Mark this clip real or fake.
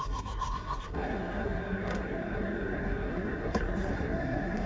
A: fake